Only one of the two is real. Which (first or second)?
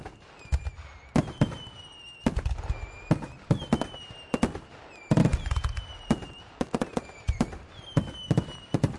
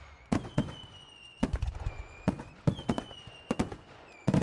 first